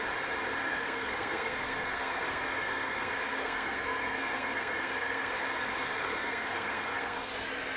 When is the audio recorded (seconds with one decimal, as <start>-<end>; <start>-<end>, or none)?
0.0-0.7; 5.4-6.0; 7.3-7.8